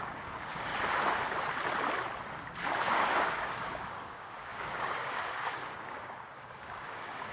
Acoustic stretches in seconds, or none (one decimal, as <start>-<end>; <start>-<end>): 0.7-2.9